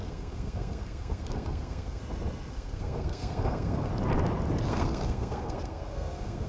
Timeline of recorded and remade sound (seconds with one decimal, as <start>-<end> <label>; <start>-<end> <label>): 0.0-2.0 remade; 2.0-2.5 recorded; 2.5-3.9 remade; 3.9-4.7 recorded; 4.7-6.5 remade